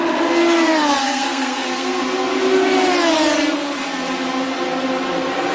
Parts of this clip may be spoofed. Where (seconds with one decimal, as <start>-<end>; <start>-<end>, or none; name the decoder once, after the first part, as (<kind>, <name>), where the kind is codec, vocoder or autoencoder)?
1.0-2.0 (codec, SNAC)